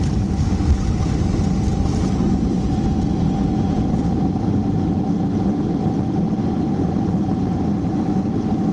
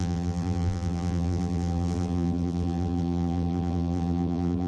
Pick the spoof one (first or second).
second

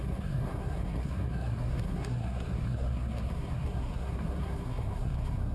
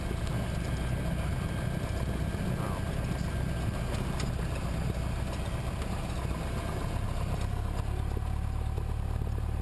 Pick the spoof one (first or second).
first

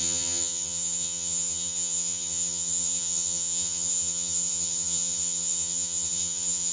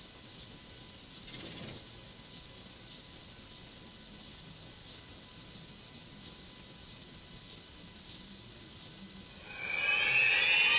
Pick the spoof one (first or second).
first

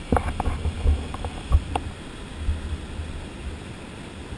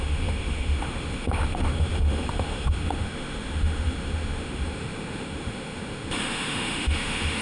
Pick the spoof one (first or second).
second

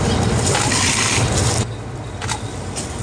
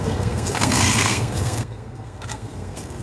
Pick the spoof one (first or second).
second